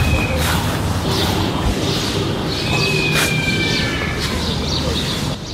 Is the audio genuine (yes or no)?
yes